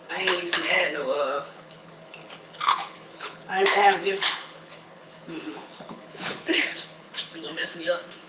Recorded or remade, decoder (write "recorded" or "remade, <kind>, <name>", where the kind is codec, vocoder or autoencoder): remade, codec, HILCodec